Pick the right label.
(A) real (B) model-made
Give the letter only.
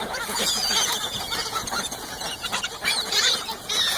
B